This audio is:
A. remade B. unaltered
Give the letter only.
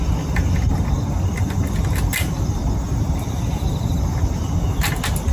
B